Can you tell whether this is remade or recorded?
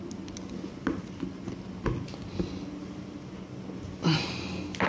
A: recorded